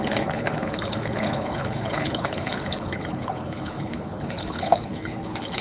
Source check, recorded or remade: remade